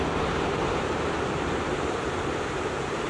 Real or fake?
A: fake